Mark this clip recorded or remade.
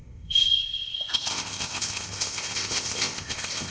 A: remade